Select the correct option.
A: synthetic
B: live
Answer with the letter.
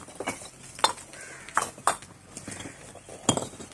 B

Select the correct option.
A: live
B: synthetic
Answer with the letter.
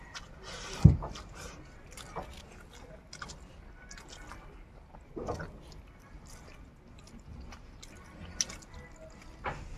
A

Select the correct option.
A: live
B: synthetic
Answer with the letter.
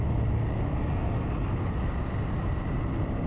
A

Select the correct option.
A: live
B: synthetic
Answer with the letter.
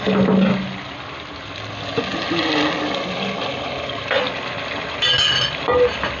A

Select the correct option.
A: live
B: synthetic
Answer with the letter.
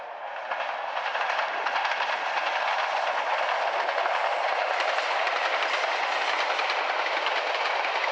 A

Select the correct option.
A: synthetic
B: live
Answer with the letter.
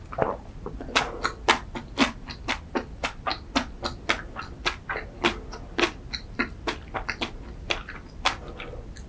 B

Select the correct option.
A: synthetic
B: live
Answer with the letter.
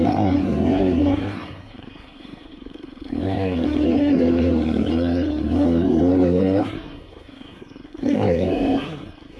A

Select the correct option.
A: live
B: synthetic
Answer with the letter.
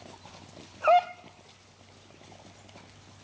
A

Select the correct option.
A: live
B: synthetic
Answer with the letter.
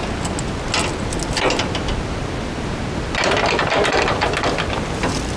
A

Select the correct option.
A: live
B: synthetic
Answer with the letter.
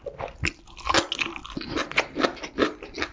A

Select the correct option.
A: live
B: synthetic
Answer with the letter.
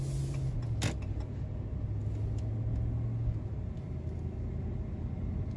A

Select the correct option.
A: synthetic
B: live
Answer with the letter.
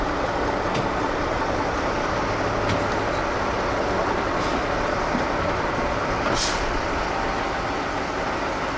B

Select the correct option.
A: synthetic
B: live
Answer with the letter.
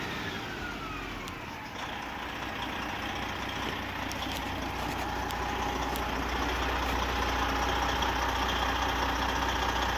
B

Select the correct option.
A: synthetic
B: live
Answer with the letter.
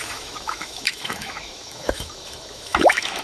A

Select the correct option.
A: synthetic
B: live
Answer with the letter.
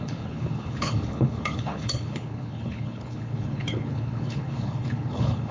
A